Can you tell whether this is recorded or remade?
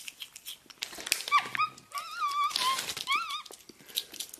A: recorded